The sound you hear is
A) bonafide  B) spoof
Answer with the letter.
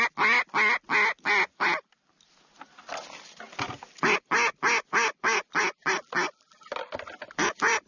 A